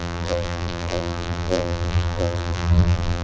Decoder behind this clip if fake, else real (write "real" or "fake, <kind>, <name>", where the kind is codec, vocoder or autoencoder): fake, vocoder, BigVGAN v2